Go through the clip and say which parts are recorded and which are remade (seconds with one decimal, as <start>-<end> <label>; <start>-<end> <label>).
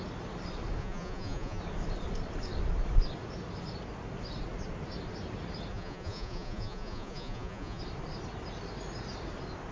0.0-0.8 recorded; 0.8-1.6 remade; 1.6-5.7 recorded; 5.7-7.8 remade; 7.8-9.7 recorded